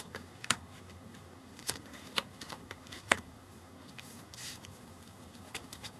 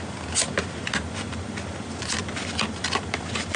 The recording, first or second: second